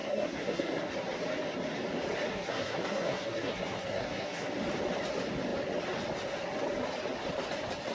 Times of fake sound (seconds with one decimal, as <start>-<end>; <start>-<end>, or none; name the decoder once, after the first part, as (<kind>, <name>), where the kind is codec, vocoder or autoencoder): 0.0-0.9 (codec, SNAC); 2.3-4.5